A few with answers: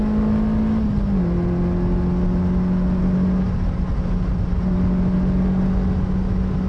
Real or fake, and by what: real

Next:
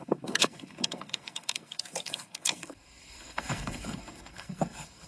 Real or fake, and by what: fake, codec, SNAC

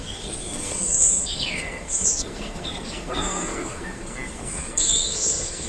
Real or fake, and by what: fake, codec, SNAC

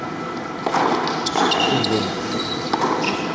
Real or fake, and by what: real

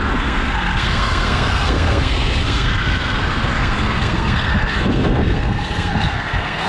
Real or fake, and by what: fake, codec, SNAC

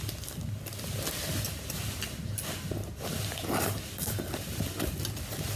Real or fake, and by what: real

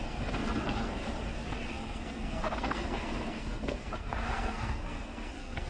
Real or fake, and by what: fake, codec, SNAC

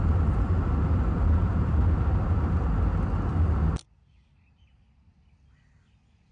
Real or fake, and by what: real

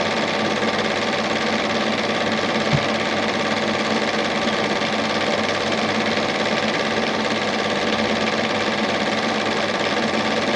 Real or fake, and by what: real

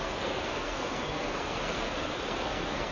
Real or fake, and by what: fake, codec, SNAC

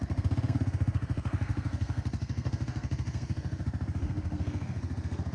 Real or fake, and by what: fake, codec, SNAC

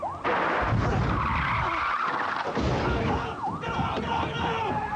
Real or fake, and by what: real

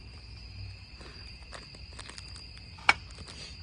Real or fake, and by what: real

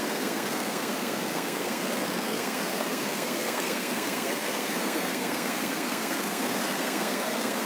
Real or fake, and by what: fake, codec, SNAC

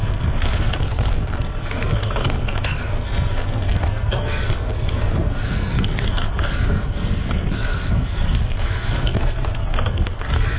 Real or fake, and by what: fake, codec, SNAC